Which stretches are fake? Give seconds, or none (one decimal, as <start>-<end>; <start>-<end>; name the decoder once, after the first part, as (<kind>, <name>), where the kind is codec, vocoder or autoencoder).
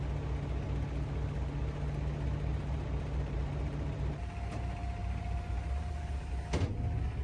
2.5-4.2 (vocoder, BigVGAN v2); 5.0-6.3